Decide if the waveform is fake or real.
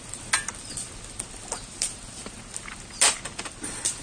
real